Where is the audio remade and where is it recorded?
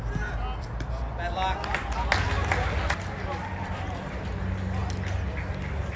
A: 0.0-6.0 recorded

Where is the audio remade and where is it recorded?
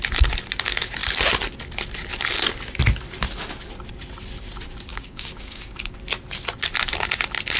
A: 0.0-4.9 recorded; 4.9-5.9 remade; 5.9-7.6 recorded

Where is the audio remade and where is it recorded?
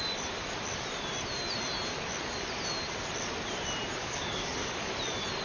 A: 0.0-4.0 recorded; 4.0-4.9 remade; 4.9-5.4 recorded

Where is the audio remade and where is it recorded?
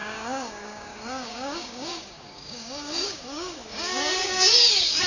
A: 0.0-5.1 remade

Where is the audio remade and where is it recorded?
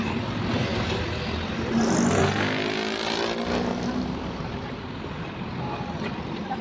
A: 0.0-6.6 recorded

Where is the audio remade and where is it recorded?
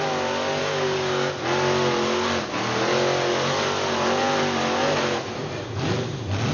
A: 0.0-0.6 recorded; 0.6-1.3 remade; 1.3-6.5 recorded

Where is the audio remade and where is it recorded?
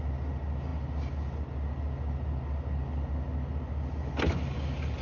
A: 0.0-5.0 recorded